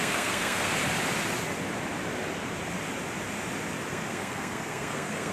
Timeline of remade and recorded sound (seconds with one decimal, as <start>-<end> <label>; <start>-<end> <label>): 0.0-0.8 remade; 0.8-3.9 recorded; 3.9-5.3 remade